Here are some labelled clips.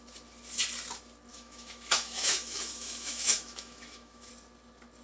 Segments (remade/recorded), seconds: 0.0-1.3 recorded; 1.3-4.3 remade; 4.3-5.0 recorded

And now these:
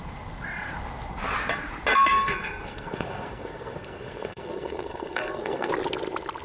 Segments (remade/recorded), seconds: 0.0-1.9 recorded; 1.9-5.7 remade; 5.7-6.4 recorded

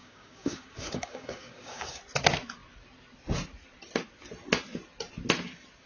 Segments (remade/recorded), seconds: 0.0-2.0 remade; 2.0-5.9 recorded

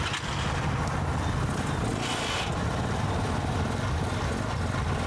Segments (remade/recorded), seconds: 0.0-5.1 recorded

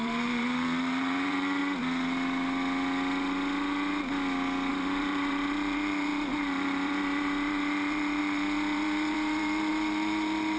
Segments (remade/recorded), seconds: 0.0-1.6 remade; 1.6-4.7 recorded; 4.7-10.6 remade

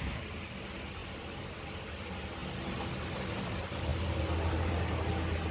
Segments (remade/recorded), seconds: 0.0-5.5 recorded